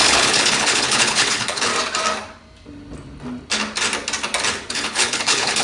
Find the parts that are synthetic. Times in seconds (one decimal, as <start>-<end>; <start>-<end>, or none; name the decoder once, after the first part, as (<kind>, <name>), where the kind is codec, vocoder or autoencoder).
0.0-1.7 (codec, HILCodec); 4.7-5.6